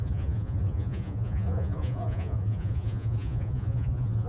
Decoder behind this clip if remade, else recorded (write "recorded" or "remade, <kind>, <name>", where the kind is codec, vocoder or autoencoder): remade, vocoder, Vocos